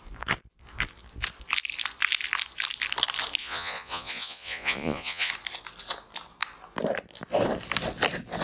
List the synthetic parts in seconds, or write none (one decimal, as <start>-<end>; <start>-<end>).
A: 3.4-5.3